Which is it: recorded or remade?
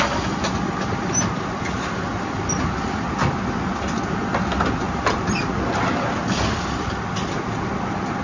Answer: recorded